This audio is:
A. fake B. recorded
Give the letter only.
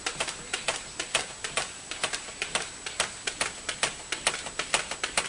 B